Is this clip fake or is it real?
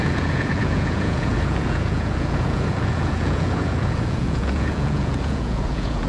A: fake